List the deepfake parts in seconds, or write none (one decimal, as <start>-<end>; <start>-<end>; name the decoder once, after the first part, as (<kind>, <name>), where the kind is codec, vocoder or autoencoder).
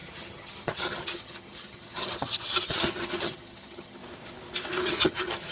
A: 0.0-4.0 (vocoder, HiFi-GAN); 4.8-5.5